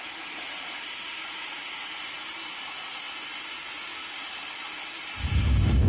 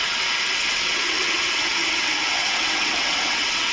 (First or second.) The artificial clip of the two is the second